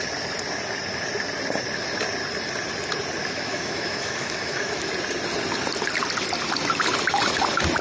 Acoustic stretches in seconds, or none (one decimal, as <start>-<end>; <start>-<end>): 0.0-3.2; 4.9-7.8